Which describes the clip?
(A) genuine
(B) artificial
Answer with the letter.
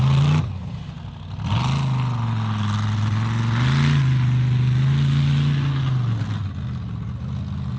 A